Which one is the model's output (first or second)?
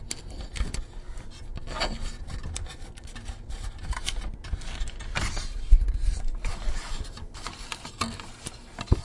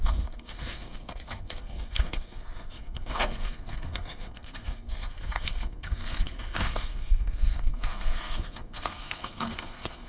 second